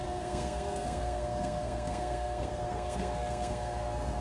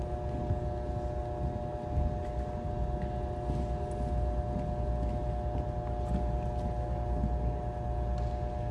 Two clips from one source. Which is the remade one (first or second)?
first